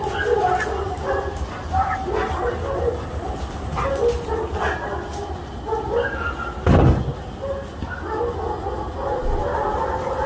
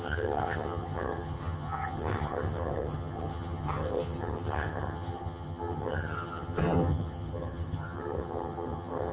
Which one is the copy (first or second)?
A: second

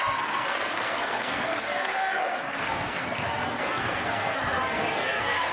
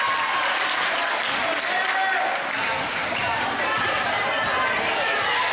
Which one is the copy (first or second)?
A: first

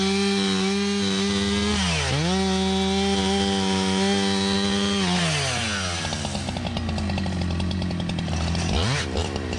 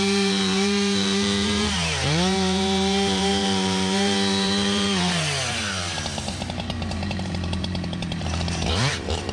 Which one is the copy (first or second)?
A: second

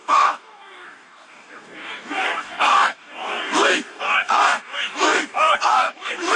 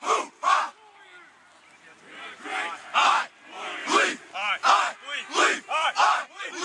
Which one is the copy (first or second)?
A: first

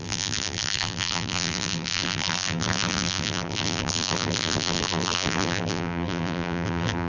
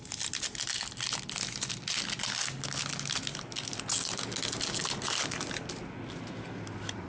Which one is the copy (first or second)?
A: first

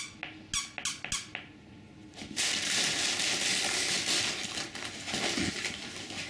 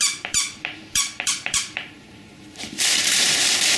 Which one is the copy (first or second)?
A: second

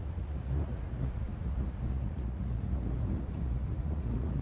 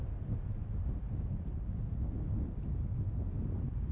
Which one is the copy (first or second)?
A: first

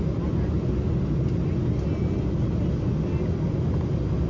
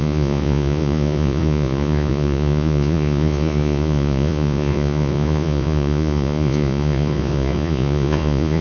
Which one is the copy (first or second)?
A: second